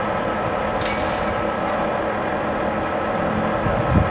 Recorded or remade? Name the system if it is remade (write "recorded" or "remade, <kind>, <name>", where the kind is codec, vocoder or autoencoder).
recorded